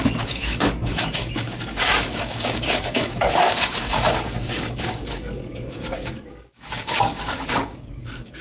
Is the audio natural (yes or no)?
no